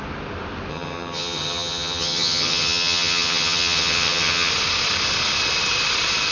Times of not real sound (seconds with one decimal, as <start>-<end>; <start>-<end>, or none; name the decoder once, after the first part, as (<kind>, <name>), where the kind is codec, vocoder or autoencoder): 0.7-4.5 (vocoder, HiFi-GAN)